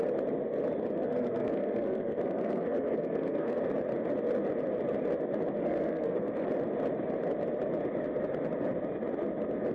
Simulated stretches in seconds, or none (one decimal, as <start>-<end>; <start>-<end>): 0.9-3.7; 5.6-6.5